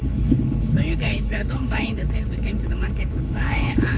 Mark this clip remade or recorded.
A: remade